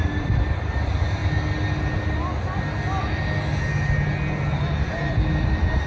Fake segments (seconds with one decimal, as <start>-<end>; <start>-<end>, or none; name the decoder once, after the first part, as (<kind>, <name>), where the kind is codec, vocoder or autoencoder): 0.0-1.2 (vocoder, BigVGAN v2); 4.5-5.9